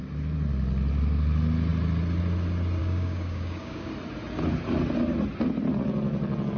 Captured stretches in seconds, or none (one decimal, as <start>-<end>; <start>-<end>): 0.0-2.8; 3.9-6.6